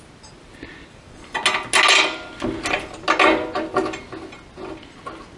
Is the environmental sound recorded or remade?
recorded